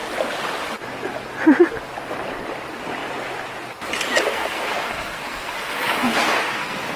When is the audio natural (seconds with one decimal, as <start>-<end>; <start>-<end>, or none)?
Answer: 0.0-4.3